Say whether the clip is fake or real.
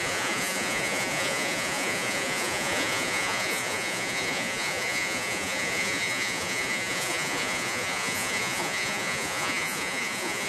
fake